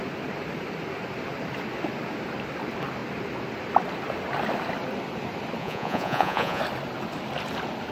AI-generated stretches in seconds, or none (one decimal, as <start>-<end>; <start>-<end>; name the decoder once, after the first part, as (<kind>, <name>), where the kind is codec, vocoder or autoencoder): 5.6-6.6 (vocoder, Vocos)